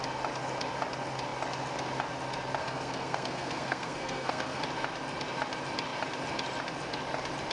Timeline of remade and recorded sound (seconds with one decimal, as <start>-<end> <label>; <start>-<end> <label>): 0.0-2.6 recorded; 2.6-4.6 remade; 4.6-7.5 recorded